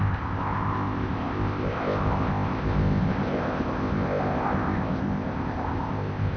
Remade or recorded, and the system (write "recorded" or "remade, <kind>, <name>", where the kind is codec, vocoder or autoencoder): remade, codec, ZipCodec